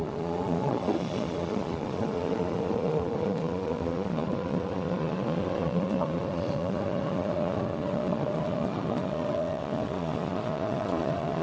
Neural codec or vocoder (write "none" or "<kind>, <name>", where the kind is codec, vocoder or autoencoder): vocoder, Vocos